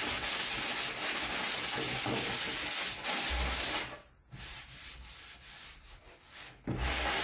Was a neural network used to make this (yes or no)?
no